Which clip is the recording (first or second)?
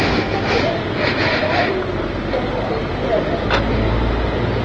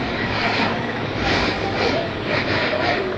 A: first